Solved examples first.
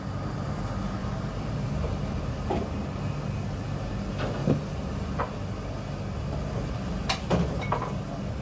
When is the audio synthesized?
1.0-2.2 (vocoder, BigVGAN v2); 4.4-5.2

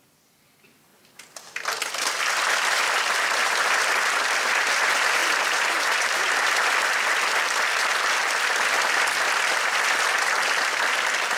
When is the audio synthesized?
5.2-6.3 (vocoder, BigVGAN v2)

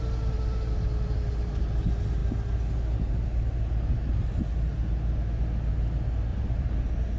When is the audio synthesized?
6.3-6.8 (vocoder, BigVGAN v2)

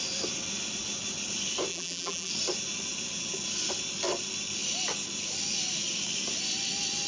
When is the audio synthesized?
1.7-2.3 (vocoder, BigVGAN v2)

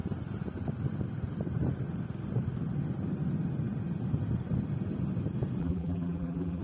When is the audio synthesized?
5.6-6.6 (vocoder, BigVGAN v2)

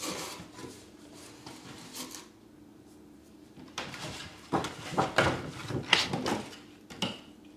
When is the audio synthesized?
0.6-1.3 (vocoder, BigVGAN v2); 2.7-4.6

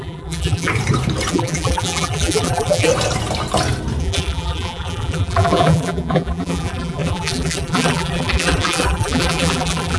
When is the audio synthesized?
0.0-0.7 (vocoder, BigVGAN v2); 1.3-2.9; 4.0-10.0

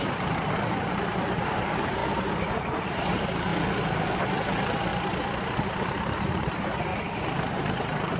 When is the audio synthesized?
0.0-2.0 (vocoder, BigVGAN v2); 2.8-3.5; 4.4-6.9; 7.6-8.2